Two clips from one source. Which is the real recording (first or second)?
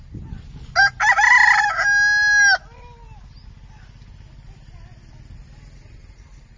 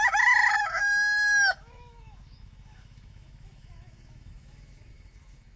first